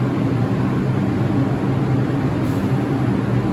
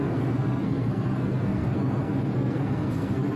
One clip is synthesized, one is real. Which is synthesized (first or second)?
second